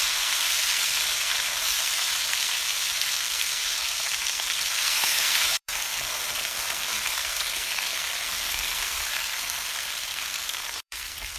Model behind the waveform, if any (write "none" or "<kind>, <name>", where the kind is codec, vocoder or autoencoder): codec, SNAC